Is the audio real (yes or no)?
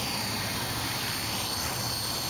yes